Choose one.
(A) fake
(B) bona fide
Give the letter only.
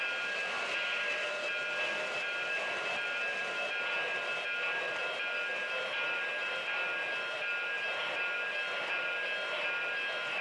B